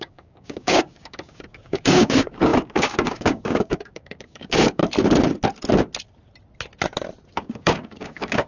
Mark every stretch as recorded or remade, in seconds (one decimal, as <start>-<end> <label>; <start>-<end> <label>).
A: 0.0-4.8 remade; 4.8-7.3 recorded; 7.3-8.5 remade